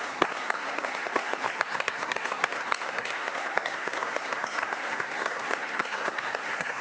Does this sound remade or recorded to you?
remade